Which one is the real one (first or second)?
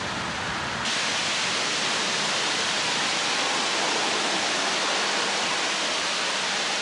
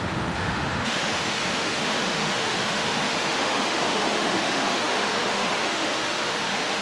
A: first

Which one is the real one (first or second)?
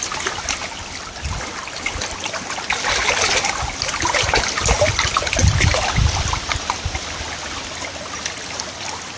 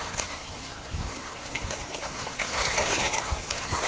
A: first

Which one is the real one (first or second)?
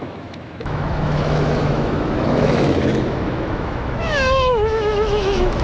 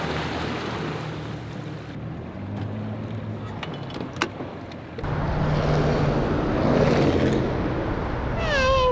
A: second